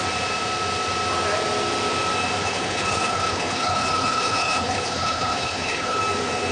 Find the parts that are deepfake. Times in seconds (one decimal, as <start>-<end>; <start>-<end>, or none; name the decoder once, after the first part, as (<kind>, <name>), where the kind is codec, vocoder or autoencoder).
2.4-6.0 (codec, HILCodec)